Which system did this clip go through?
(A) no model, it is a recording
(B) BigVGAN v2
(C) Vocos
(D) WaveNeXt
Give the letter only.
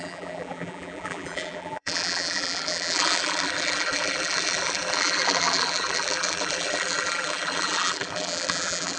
B